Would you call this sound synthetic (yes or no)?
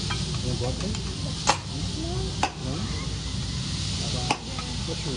no